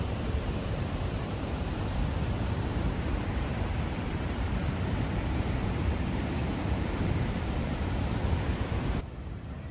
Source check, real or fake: fake